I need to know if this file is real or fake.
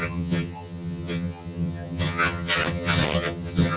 fake